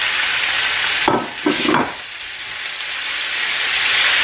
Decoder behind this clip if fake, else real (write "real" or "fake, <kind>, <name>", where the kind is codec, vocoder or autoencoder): real